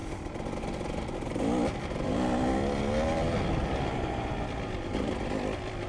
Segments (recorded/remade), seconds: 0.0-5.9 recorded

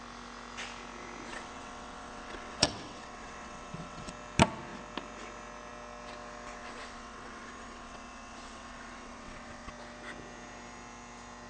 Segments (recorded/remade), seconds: 0.0-1.3 recorded; 1.3-4.1 remade; 4.1-6.6 recorded; 6.6-9.7 remade; 9.7-11.5 recorded

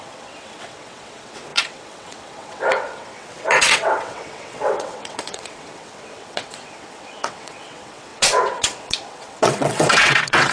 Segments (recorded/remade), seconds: 0.0-10.5 remade

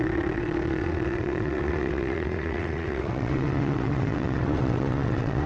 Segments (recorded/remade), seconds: 0.0-5.5 remade

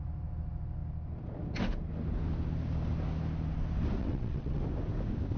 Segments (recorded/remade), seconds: 0.0-4.0 recorded; 4.0-4.6 remade; 4.6-5.4 recorded